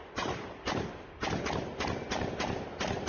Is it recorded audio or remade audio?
recorded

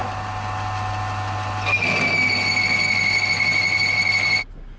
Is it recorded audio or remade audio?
recorded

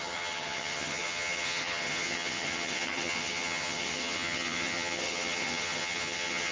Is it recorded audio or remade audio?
remade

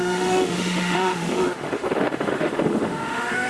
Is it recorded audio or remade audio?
remade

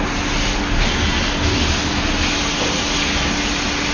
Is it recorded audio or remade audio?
recorded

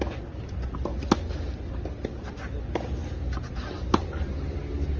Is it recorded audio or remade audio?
recorded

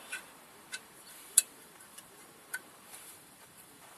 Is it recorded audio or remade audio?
remade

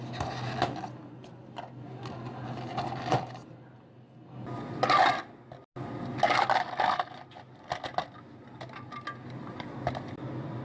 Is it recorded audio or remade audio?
recorded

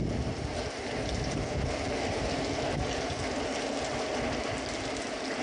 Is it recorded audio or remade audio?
recorded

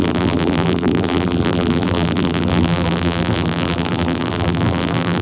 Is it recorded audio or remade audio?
remade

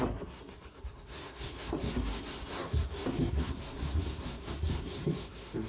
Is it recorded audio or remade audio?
remade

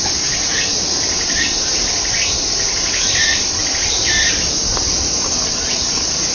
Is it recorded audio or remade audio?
recorded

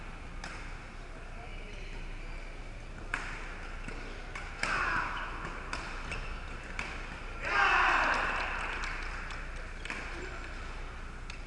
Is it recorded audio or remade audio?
recorded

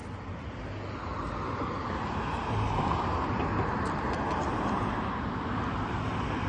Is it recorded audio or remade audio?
recorded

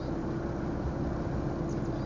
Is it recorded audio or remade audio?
recorded